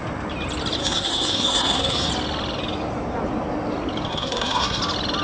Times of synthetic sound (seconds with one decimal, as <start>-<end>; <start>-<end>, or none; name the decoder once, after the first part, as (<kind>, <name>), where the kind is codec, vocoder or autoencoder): 0.8-2.1 (codec, SNAC); 4.1-4.8